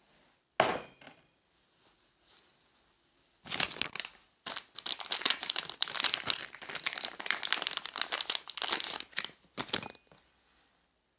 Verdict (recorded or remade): recorded